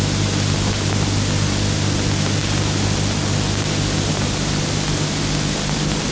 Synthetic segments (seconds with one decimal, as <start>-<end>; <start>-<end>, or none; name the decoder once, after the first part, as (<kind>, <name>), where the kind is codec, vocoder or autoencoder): none